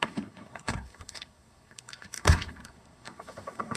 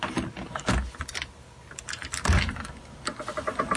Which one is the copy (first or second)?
first